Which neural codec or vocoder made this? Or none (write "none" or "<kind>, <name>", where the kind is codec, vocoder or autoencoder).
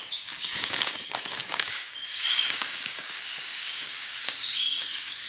codec, DAC